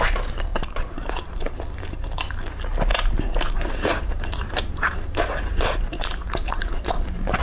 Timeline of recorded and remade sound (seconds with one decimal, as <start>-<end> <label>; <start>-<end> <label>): 0.0-0.5 recorded; 0.5-1.5 remade; 1.5-2.9 recorded; 2.9-7.4 remade